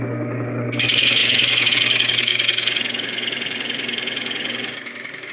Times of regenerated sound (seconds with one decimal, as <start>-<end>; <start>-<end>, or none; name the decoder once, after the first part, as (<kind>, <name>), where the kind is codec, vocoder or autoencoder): 0.0-5.3 (codec, DAC)